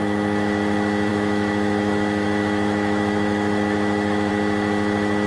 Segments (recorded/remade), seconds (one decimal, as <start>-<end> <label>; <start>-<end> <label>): 0.0-1.1 recorded; 1.1-4.3 remade; 4.3-5.3 recorded